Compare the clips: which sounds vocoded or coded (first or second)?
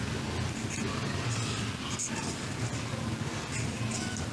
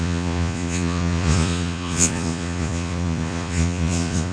second